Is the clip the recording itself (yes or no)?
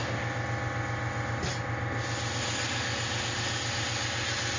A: yes